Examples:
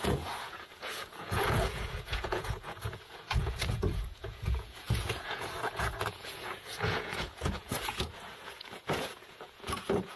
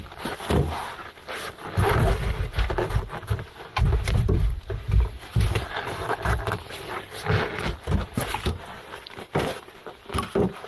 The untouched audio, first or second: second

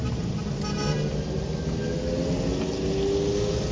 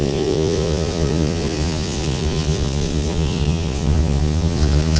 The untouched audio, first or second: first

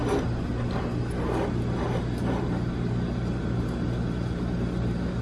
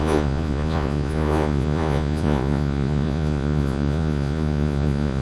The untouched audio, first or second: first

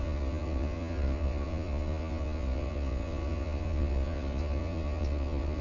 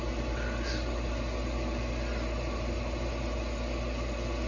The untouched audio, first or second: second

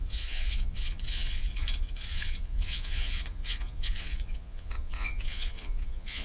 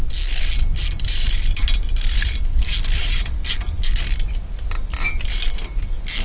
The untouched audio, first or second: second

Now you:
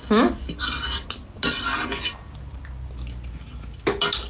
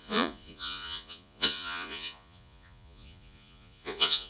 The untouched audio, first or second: first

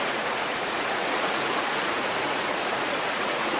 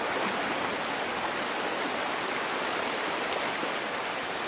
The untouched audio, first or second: second